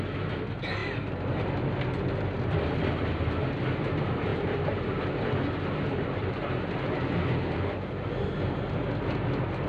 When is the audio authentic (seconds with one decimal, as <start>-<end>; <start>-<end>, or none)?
0.0-9.7